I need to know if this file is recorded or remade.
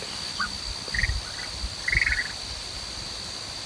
recorded